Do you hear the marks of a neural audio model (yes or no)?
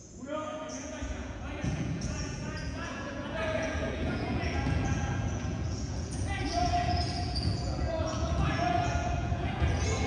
yes